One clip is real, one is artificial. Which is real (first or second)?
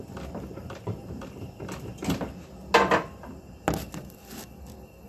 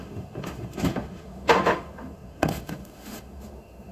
first